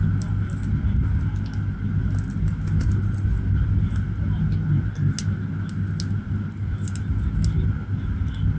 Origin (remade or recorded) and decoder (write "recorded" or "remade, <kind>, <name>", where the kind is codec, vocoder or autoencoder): recorded